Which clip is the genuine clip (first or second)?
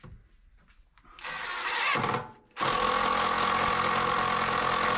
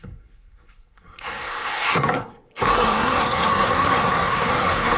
first